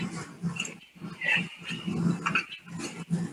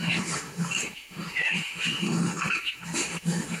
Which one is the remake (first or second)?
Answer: second